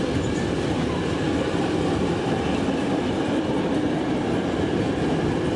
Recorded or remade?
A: recorded